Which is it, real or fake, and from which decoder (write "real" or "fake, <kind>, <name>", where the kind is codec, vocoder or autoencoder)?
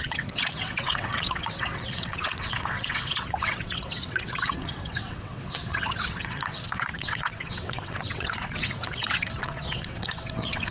fake, vocoder, WaveNeXt